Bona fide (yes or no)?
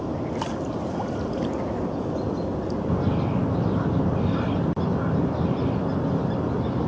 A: yes